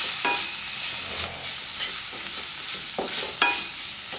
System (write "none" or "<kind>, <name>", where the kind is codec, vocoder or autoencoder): none